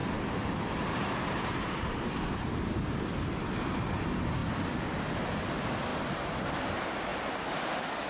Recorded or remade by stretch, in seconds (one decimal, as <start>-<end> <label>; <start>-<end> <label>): 0.0-2.3 remade; 2.3-5.9 recorded; 5.9-6.6 remade; 6.6-7.1 recorded; 7.1-7.6 remade; 7.6-8.1 recorded